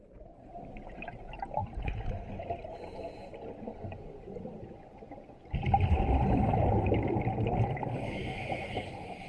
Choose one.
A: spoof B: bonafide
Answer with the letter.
B